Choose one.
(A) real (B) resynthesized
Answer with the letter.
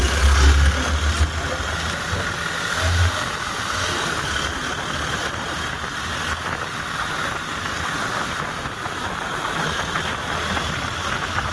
A